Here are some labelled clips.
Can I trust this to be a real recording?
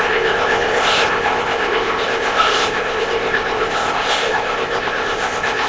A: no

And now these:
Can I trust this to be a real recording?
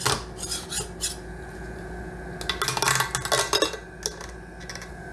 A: yes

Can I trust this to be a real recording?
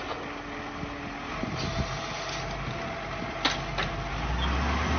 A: yes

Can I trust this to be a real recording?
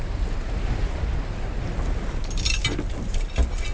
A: yes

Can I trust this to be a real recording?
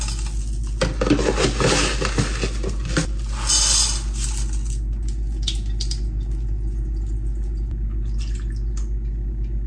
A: yes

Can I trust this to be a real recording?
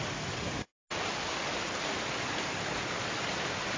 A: yes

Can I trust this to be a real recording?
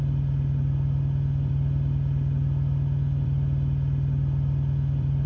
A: yes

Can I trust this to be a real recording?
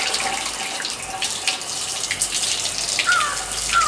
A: yes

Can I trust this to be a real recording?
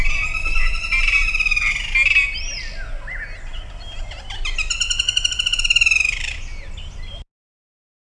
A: yes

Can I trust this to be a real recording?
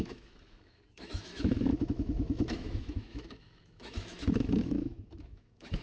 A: no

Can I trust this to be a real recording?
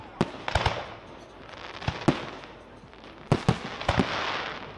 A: yes